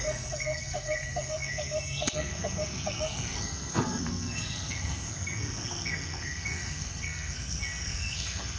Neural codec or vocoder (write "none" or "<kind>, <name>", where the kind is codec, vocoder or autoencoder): codec, SNAC